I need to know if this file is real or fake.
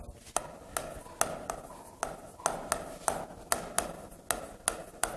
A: real